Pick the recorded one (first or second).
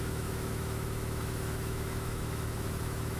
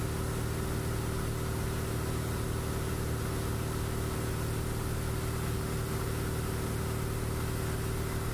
second